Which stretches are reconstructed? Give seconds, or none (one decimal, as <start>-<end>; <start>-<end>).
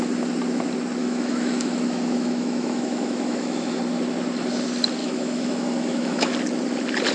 1.0-3.8; 5.0-6.3